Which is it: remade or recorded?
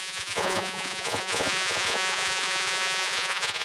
remade